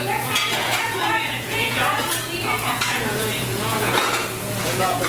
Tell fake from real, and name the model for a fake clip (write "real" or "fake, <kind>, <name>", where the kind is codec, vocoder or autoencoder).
fake, vocoder, Vocos